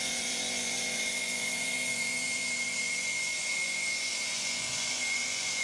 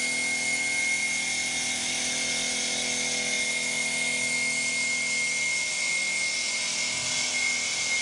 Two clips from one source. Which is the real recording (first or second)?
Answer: second